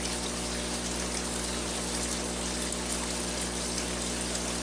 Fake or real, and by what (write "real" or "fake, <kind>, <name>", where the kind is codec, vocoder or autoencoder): real